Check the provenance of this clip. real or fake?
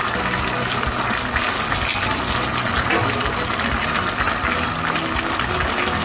real